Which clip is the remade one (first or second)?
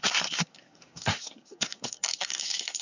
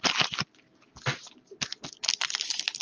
first